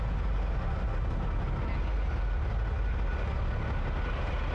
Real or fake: real